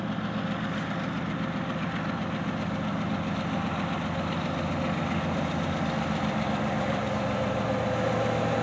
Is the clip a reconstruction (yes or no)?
no